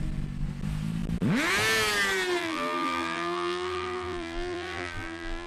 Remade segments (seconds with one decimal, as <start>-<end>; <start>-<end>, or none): 2.4-5.5